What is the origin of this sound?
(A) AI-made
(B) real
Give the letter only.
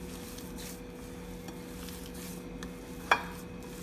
B